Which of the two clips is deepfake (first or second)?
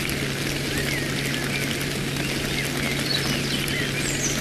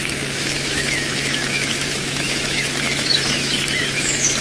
second